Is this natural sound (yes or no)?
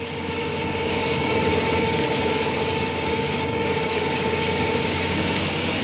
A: no